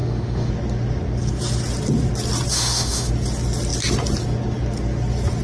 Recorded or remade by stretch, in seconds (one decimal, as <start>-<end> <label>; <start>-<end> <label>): 0.0-0.5 remade; 0.5-2.5 recorded; 2.5-3.1 remade; 3.1-5.4 recorded

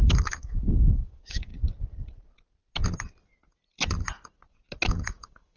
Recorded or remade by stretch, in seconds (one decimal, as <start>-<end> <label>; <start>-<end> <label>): 0.0-1.5 remade; 1.5-4.9 recorded; 4.9-5.6 remade

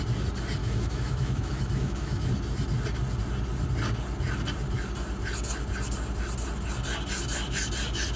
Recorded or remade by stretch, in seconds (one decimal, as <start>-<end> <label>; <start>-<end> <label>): 0.0-0.6 recorded; 0.6-2.3 remade; 2.3-8.2 recorded

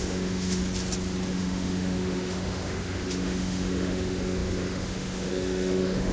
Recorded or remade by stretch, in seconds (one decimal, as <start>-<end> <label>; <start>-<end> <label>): 0.0-0.6 remade; 0.6-1.3 recorded; 1.3-6.1 remade

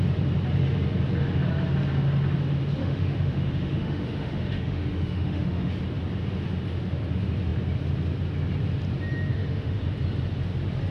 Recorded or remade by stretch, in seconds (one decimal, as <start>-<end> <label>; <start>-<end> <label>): 0.0-2.8 recorded; 2.8-5.7 remade; 5.7-9.3 recorded; 9.3-9.8 remade; 9.8-10.9 recorded